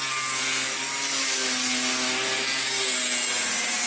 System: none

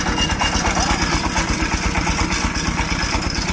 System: none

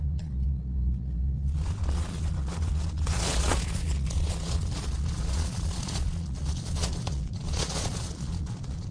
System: vocoder, Vocos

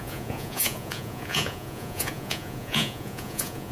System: vocoder, Vocos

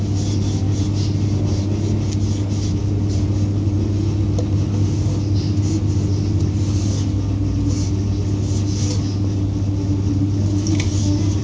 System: none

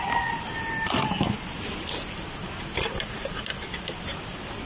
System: none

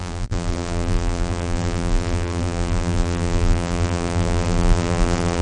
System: vocoder, BigVGAN v2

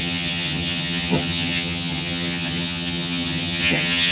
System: vocoder, HiFi-GAN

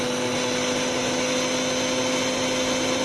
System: none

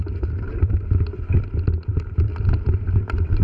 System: none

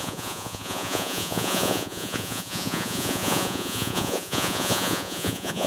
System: vocoder, Vocos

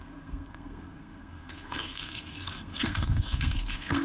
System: codec, SNAC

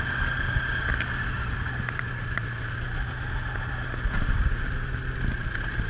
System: none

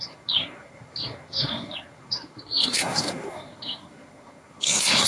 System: codec, SNAC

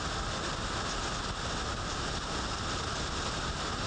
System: none